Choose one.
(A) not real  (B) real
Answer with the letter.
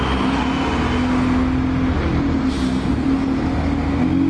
B